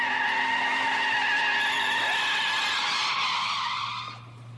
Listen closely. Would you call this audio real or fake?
fake